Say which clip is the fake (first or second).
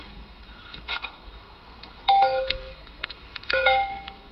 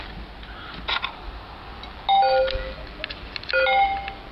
first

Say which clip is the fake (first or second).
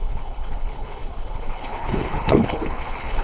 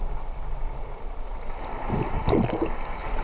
first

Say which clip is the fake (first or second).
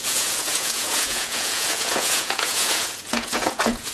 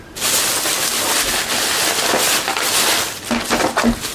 first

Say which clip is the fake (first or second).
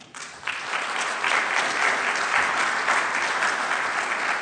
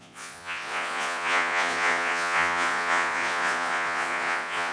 second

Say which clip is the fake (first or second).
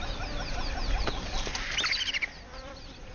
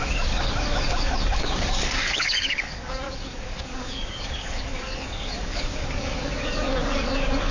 second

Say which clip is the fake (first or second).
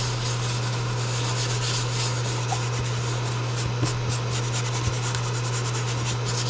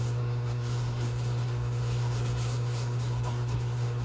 second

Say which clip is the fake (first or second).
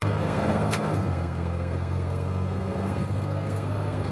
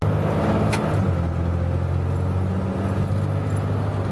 first